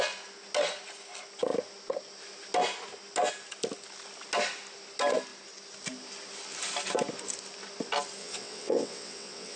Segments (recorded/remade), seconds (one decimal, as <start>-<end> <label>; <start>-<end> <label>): 0.0-8.2 recorded; 8.2-9.6 remade